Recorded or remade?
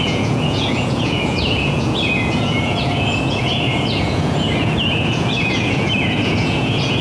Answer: remade